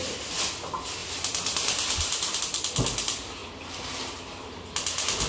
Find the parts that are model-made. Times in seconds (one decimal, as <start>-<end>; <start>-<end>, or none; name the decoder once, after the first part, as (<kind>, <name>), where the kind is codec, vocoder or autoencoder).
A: 1.0-2.4 (vocoder, BigVGAN v2)